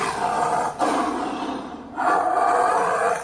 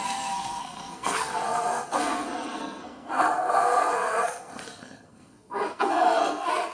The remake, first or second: second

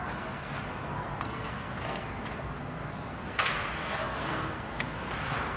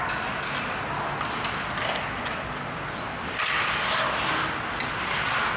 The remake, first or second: first